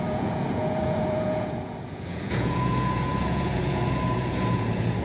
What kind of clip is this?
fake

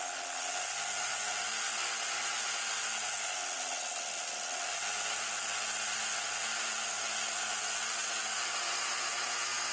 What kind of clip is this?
real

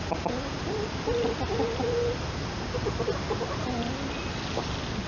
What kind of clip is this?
real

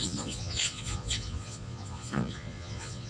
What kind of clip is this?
fake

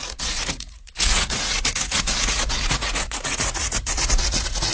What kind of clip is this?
fake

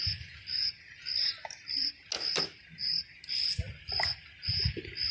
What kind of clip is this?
real